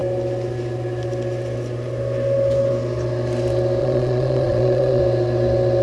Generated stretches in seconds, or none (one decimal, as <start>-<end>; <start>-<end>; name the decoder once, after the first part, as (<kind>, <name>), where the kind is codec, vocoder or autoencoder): 3.8-5.0 (vocoder, Vocos)